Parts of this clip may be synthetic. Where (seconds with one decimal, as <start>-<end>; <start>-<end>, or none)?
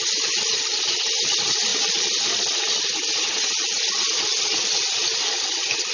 none